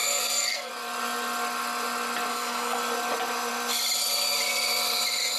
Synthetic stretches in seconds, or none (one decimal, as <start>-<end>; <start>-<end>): 0.0-0.7; 2.3-2.8